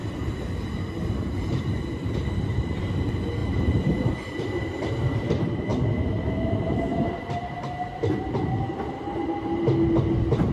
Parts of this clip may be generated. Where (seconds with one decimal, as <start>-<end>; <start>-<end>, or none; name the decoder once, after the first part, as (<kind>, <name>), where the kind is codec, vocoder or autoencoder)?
0.0-2.8 (vocoder, BigVGAN v2); 3.4-5.3